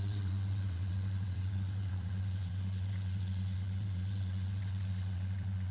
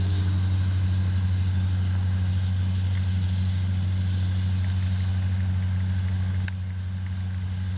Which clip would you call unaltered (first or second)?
second